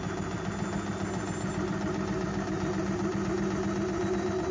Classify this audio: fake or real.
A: real